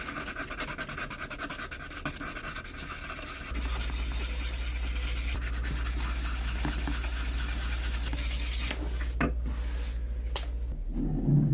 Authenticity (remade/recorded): recorded